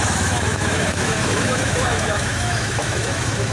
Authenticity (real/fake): fake